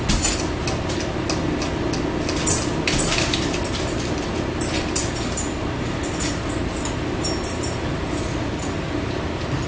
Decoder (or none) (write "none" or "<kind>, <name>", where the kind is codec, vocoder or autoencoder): none